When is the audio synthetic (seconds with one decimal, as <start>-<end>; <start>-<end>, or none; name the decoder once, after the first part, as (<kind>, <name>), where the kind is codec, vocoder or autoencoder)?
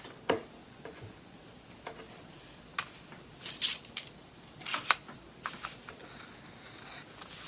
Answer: 0.6-1.7 (vocoder, Vocos)